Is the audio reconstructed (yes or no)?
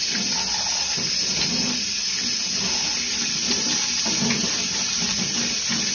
no